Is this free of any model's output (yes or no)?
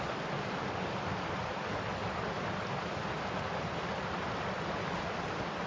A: yes